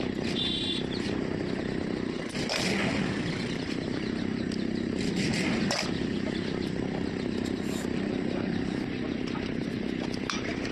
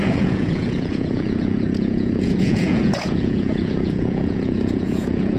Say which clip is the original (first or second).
first